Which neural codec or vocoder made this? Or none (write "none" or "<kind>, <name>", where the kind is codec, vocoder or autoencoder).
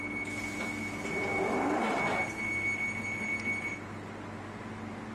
none